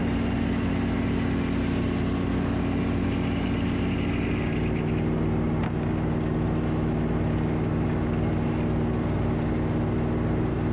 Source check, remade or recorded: recorded